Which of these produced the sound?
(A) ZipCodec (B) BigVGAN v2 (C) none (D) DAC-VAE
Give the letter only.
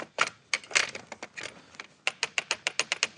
C